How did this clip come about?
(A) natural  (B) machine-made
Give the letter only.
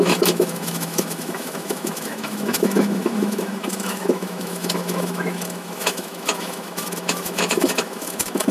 B